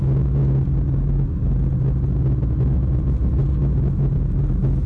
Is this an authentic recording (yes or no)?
yes